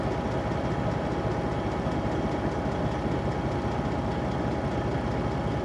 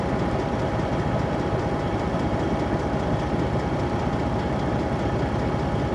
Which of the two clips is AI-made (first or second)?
second